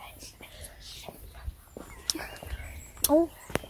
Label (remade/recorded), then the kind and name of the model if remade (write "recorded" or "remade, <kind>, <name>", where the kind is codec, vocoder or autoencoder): recorded